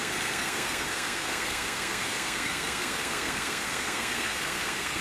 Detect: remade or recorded remade